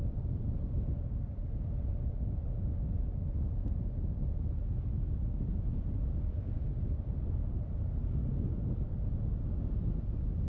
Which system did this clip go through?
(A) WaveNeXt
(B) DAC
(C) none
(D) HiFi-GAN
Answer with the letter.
C